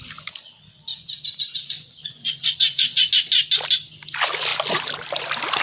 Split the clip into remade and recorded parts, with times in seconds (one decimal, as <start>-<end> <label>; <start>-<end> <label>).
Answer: 0.0-0.9 recorded; 0.9-3.1 remade; 3.1-5.6 recorded